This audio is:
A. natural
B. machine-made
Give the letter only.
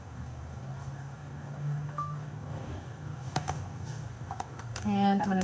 B